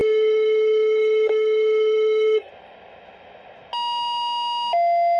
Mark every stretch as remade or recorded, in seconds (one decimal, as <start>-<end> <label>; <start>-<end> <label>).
0.0-2.5 remade; 2.5-5.2 recorded